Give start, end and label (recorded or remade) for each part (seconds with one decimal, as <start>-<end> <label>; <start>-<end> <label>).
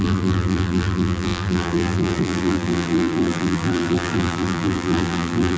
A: 0.0-5.6 remade